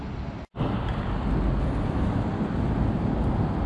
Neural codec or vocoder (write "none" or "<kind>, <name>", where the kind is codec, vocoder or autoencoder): none